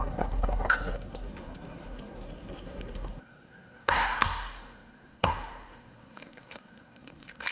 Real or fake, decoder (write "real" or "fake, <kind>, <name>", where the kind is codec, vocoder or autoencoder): fake, codec, SNAC